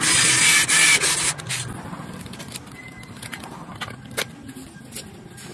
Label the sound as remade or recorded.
recorded